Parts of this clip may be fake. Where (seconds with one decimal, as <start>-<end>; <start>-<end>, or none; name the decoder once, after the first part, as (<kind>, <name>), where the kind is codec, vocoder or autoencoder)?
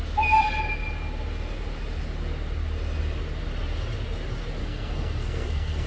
4.6-5.9 (codec, SNAC)